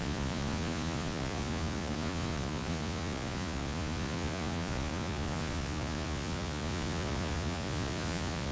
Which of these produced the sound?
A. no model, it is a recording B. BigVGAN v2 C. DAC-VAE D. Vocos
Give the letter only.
D